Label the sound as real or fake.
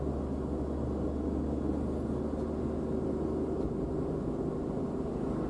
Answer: real